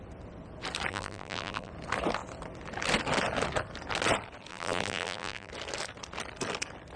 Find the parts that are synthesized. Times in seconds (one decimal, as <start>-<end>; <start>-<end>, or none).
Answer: 0.9-1.7; 4.5-5.5